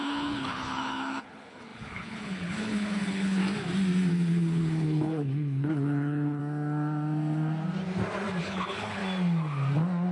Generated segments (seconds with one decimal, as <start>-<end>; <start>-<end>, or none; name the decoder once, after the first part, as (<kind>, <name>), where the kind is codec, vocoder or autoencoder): 0.0-3.4 (codec, HILCodec); 4.1-6.4; 8.4-9.0